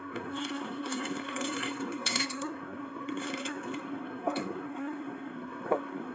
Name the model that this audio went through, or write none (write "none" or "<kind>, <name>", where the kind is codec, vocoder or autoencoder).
codec, SNAC